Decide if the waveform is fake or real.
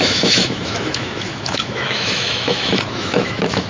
fake